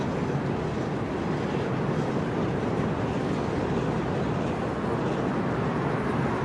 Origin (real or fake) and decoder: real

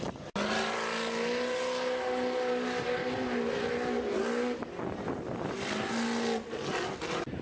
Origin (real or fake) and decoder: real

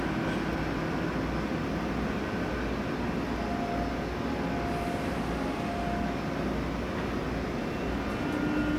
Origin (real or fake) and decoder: real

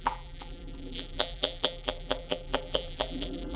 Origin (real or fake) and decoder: fake, vocoder, BigVGAN v2